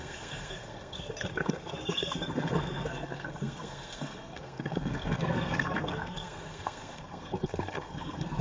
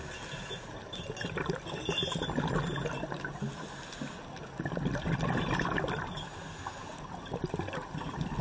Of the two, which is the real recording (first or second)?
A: second